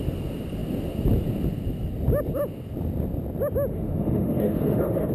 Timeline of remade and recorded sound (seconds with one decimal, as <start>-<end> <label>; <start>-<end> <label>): 0.0-3.7 recorded; 3.7-5.1 remade